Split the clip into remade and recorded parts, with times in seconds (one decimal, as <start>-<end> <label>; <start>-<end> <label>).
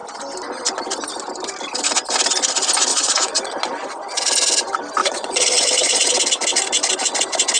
0.0-2.9 recorded; 2.9-3.6 remade; 3.6-5.0 recorded; 5.0-6.1 remade; 6.1-7.6 recorded